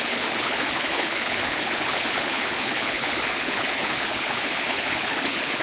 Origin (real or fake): fake